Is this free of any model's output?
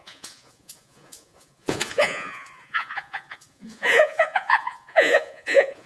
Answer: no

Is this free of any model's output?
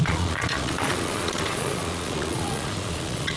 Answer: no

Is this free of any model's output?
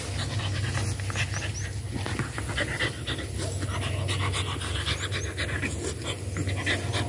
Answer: yes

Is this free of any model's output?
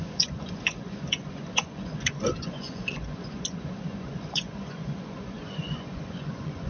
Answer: no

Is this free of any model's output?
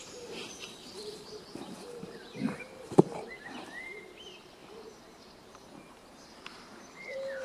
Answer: no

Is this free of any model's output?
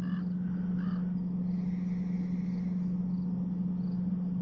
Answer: yes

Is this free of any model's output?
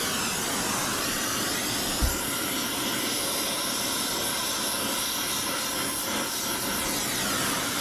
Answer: no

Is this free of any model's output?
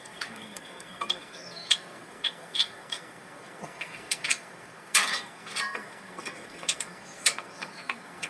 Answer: no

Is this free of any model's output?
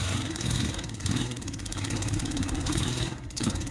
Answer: no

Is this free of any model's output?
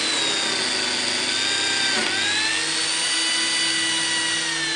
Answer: yes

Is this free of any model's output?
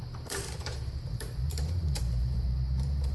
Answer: no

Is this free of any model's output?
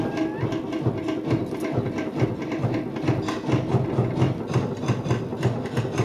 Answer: yes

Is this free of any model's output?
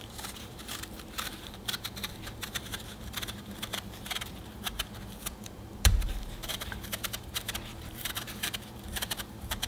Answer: no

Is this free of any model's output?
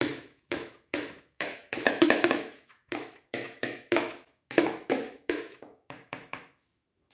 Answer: no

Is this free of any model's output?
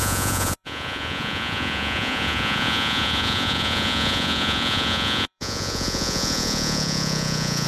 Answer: no